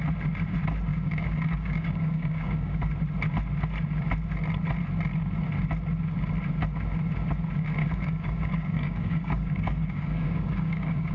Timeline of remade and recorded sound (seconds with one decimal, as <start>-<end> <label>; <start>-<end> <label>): 0.0-0.9 recorded; 0.9-2.9 remade; 2.9-7.8 recorded; 7.8-11.1 remade